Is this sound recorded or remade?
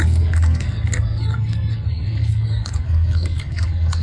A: remade